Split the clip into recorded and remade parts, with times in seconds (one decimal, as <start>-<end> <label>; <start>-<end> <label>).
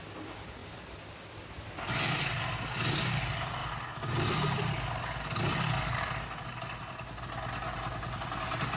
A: 0.0-8.8 recorded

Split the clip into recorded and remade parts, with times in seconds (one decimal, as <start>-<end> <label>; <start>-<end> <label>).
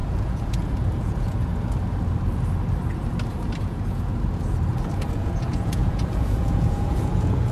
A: 0.0-1.5 remade; 1.5-3.6 recorded; 3.6-4.1 remade; 4.1-5.1 recorded; 5.1-7.5 remade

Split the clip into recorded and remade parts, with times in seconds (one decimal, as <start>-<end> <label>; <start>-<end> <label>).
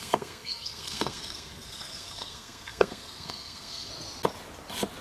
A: 0.0-3.9 remade; 3.9-5.0 recorded